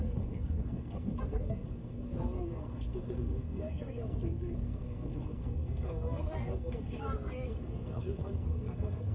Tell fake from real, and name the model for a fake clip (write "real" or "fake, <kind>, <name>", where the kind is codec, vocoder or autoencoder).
fake, codec, SNAC